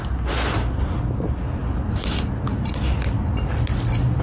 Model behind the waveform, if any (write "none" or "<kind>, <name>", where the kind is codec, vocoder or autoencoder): none